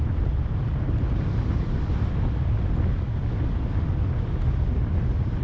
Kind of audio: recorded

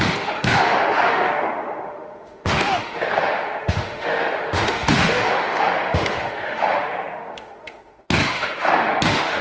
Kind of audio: remade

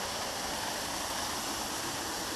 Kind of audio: recorded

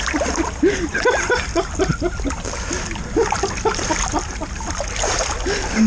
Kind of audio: recorded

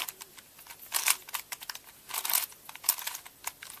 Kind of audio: recorded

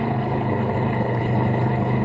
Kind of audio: remade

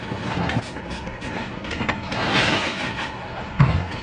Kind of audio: remade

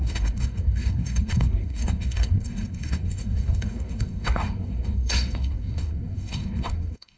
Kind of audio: remade